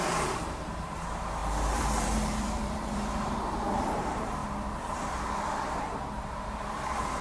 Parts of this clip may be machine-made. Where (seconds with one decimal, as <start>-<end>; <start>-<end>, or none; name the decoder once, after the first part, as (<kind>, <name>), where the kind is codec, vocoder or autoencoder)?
0.0-4.4 (vocoder, BigVGAN v2); 5.8-7.2